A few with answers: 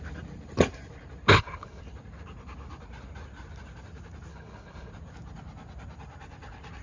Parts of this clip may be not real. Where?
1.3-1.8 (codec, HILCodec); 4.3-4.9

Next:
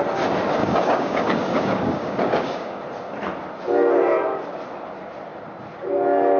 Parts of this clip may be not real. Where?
0.6-2.8 (codec, DAC)

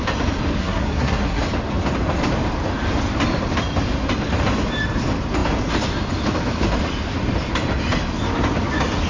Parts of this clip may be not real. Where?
0.6-1.4 (codec, SNAC)

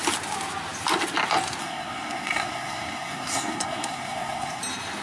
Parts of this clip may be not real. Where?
1.6-4.6 (codec, SNAC)

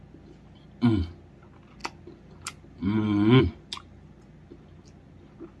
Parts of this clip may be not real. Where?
none

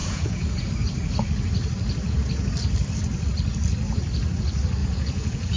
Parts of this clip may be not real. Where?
0.0-0.7 (vocoder, Vocos); 4.8-5.6